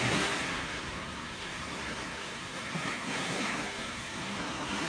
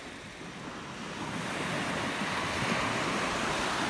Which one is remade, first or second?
first